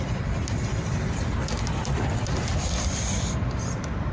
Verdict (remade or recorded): recorded